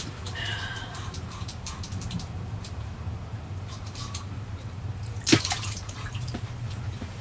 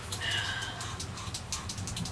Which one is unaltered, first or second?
second